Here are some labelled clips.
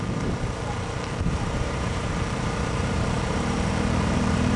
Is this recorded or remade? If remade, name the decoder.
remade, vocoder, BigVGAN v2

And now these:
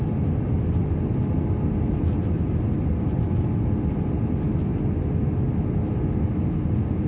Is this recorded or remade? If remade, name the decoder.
recorded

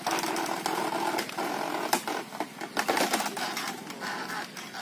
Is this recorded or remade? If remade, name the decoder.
recorded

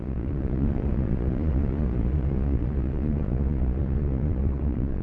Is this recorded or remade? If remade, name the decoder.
remade, vocoder, Vocos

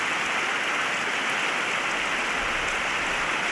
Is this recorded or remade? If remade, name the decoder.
recorded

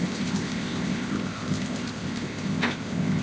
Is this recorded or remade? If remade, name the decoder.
remade, codec, ZipCodec